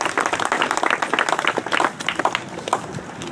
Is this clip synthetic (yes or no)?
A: no